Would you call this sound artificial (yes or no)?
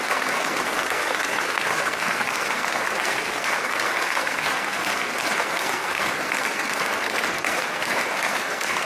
yes